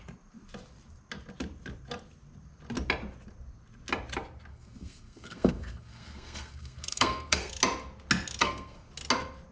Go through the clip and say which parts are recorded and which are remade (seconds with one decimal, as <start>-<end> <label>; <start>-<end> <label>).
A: 0.0-4.5 recorded; 4.5-7.5 remade; 7.5-8.4 recorded; 8.4-8.9 remade; 8.9-9.5 recorded